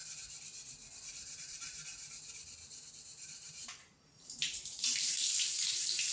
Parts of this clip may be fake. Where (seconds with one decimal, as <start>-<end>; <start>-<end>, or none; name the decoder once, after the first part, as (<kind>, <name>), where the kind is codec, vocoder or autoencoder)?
1.4-1.9 (vocoder, BigVGAN v2); 2.9-6.1